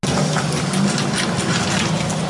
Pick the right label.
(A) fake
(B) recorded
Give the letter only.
B